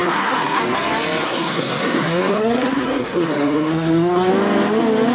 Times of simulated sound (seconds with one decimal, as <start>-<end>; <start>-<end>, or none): 0.0-0.6; 1.2-4.3